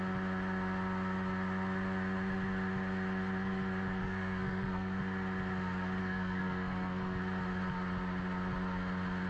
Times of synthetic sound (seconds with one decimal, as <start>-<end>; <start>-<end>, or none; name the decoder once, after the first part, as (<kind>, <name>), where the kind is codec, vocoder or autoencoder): 4.0-5.0 (codec, SNAC); 6.0-7.2